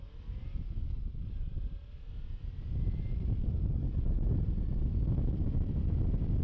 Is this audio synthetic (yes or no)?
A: no